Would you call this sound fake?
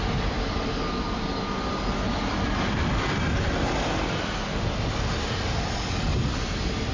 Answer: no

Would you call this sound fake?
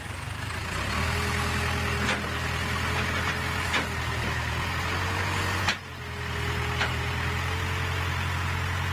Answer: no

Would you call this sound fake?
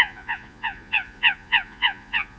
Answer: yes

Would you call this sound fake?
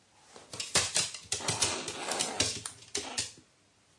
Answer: no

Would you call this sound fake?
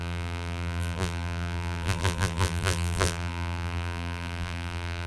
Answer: yes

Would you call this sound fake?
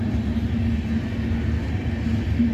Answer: no